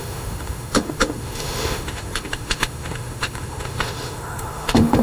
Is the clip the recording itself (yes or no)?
no